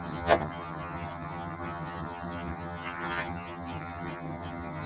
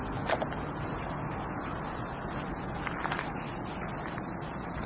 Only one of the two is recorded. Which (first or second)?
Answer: second